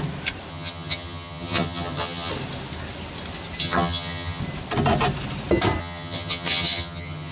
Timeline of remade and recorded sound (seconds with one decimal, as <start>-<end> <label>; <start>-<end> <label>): 0.0-0.5 recorded; 0.5-2.3 remade; 2.3-3.6 recorded; 3.6-4.4 remade; 4.4-5.8 recorded; 5.8-7.3 remade